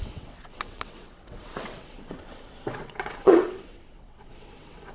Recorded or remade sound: remade